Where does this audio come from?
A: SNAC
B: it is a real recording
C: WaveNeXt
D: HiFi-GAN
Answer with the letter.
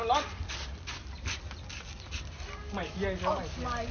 B